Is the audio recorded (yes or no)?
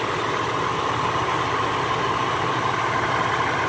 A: yes